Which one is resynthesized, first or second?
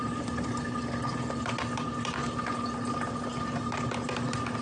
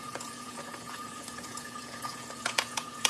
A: second